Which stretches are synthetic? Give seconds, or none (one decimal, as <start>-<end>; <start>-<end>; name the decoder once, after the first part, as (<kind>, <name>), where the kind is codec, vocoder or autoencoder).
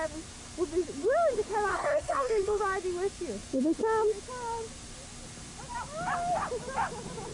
1.7-2.6 (codec, SNAC)